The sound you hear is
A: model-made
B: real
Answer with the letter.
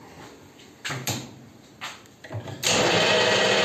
B